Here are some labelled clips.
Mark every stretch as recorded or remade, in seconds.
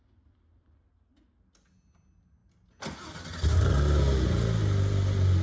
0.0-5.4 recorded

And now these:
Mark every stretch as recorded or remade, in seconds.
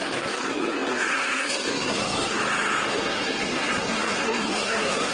0.0-2.4 remade; 2.4-2.9 recorded; 2.9-5.1 remade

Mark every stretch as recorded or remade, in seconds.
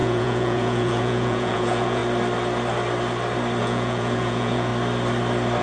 0.0-2.0 remade; 2.0-3.6 recorded; 3.6-4.7 remade; 4.7-5.6 recorded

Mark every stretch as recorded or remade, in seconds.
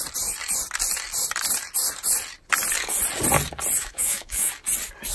0.0-3.8 recorded; 3.8-4.5 remade; 4.5-5.1 recorded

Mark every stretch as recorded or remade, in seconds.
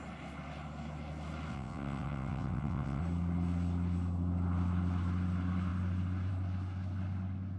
0.0-1.5 recorded; 1.5-3.0 remade; 3.0-7.6 recorded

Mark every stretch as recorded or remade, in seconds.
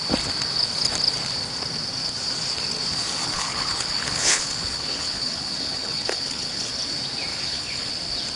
0.0-3.2 recorded; 3.2-6.7 remade; 6.7-7.3 recorded; 7.3-7.9 remade; 7.9-8.4 recorded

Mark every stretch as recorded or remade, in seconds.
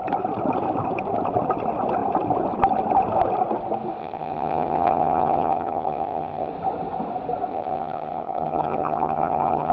0.0-4.0 recorded; 4.0-6.5 remade; 6.5-7.5 recorded; 7.5-9.7 remade